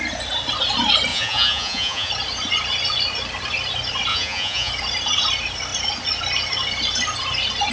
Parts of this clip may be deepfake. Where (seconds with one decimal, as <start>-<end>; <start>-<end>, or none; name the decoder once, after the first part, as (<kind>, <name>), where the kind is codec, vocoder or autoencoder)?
1.1-2.1 (vocoder, Vocos); 4.1-4.7